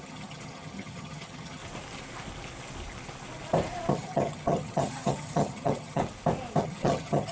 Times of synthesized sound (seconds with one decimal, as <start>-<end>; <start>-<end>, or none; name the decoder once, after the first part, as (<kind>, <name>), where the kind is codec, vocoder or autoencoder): 0.0-1.6 (vocoder, HiFi-GAN); 3.9-6.0; 6.6-7.3